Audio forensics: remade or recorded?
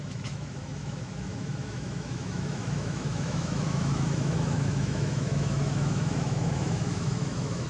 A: remade